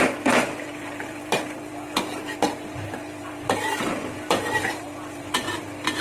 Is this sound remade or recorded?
remade